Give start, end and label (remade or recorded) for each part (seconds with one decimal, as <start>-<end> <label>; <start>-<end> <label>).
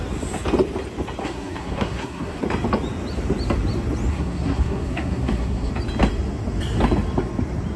0.0-1.2 recorded; 1.2-2.4 remade; 2.4-4.1 recorded; 4.1-5.7 remade; 5.7-7.8 recorded